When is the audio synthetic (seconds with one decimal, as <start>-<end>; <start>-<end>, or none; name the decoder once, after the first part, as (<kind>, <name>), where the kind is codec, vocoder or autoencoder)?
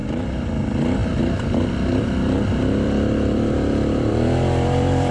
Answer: 0.6-5.1 (vocoder, BigVGAN v2)